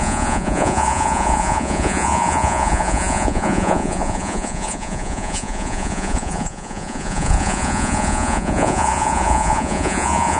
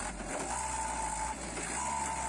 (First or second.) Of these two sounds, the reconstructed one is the first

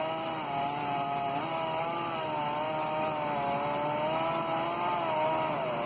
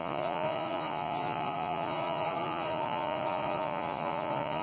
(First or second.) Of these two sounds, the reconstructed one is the second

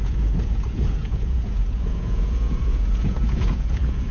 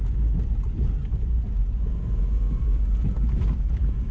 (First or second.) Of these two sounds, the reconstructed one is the first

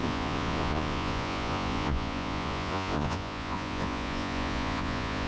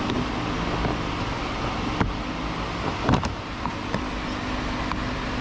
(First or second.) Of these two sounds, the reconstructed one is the first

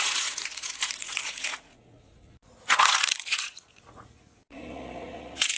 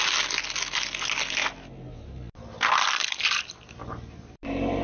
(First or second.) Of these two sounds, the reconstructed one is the first